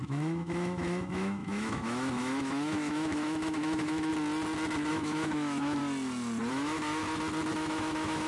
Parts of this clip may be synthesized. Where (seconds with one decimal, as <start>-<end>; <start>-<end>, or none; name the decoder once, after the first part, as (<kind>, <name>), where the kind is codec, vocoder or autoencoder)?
0.0-4.1 (autoencoder, DAC-VAE); 4.9-5.8; 6.5-7.0; 7.5-8.3